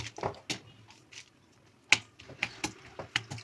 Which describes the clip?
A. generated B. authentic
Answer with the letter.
B